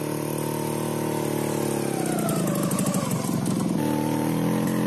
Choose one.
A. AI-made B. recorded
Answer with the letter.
B